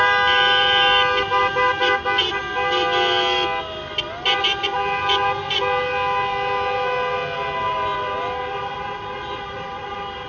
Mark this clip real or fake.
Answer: real